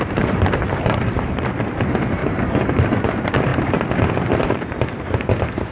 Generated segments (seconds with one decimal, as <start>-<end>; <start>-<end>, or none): 0.0-2.2; 3.0-5.7